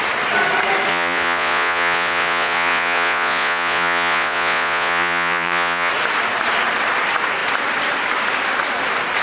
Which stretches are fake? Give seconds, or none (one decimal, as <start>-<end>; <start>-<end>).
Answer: 0.9-5.9